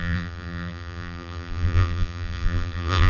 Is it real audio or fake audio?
fake